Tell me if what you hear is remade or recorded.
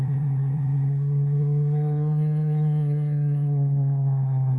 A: remade